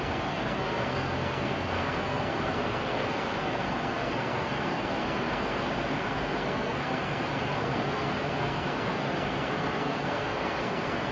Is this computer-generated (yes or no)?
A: yes